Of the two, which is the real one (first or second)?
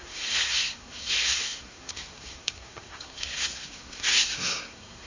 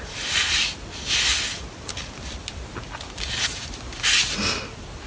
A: second